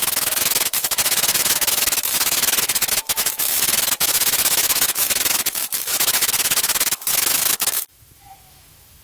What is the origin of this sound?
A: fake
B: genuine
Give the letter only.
A